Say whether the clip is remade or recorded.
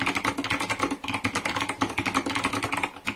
recorded